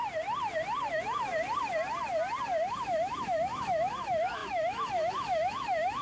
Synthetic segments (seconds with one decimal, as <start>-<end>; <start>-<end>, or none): 0.9-1.3; 2.7-6.0